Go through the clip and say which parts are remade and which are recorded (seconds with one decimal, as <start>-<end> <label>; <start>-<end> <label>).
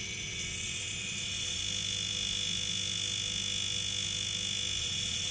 0.0-1.6 remade; 1.6-4.8 recorded; 4.8-5.3 remade